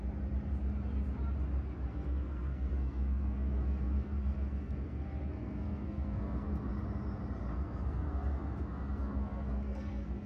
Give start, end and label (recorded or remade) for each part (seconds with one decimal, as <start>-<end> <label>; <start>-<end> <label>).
0.0-1.9 recorded; 1.9-6.7 remade; 6.7-7.5 recorded; 7.5-10.3 remade